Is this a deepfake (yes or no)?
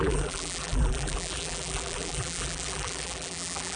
yes